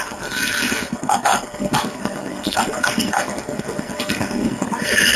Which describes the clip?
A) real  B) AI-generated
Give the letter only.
B